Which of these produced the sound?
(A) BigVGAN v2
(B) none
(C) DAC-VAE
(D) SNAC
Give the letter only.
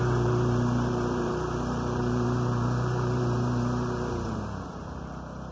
A